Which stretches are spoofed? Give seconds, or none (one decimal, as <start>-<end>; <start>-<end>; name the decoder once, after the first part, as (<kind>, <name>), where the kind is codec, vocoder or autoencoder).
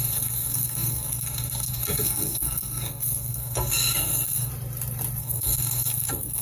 0.0-4.5 (codec, SNAC); 5.2-6.4